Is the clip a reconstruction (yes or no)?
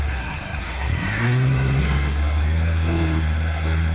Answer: yes